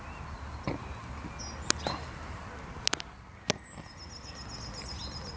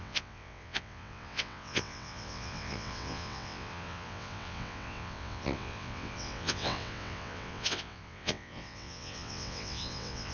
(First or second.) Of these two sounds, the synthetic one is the second